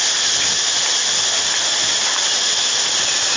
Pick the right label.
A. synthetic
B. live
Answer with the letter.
B